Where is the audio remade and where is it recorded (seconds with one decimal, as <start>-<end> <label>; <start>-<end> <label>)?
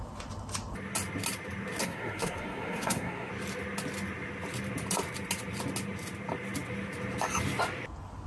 0.0-1.8 recorded; 1.8-3.3 remade; 3.3-8.3 recorded